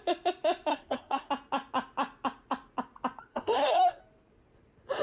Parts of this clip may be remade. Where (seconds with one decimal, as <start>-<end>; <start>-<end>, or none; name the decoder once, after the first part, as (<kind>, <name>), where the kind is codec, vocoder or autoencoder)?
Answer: 0.7-1.3 (codec, SNAC); 3.3-4.0